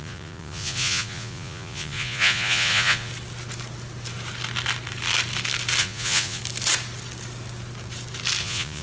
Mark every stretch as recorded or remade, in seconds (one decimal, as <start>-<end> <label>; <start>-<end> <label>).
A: 0.0-3.1 remade; 3.1-5.8 recorded; 5.8-6.4 remade; 6.4-8.4 recorded; 8.4-8.8 remade